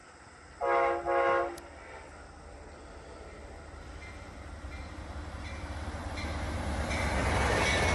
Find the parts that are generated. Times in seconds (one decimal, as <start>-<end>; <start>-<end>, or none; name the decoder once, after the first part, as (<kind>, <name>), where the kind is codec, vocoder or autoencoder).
none